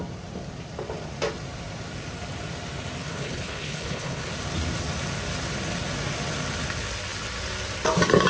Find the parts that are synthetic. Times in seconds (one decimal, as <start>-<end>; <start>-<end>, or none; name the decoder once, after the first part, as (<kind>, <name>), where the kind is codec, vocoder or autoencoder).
3.0-4.3 (codec, HILCodec)